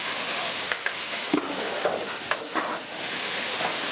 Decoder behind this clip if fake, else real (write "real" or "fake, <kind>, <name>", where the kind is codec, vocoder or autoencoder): fake, autoencoder, DAC-VAE